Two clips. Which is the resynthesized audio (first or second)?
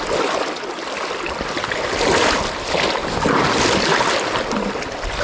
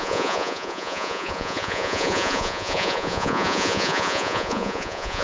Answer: second